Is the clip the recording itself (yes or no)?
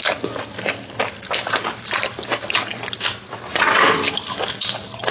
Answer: yes